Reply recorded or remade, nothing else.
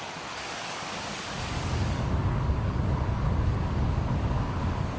remade